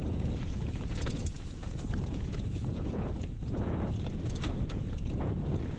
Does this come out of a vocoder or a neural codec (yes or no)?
yes